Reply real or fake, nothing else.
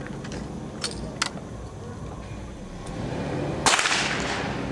real